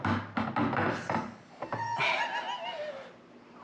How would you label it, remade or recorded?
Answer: recorded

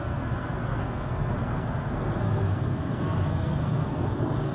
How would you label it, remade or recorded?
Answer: remade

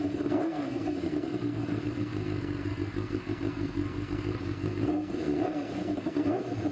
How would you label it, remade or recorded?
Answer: remade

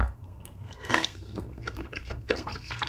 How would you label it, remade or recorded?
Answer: remade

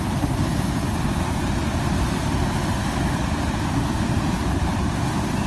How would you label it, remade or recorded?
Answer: recorded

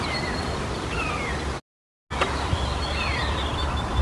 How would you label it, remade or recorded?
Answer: recorded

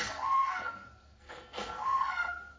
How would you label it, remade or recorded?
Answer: remade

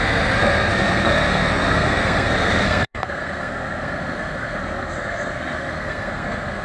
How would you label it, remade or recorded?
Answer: remade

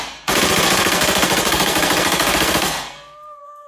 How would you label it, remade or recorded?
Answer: remade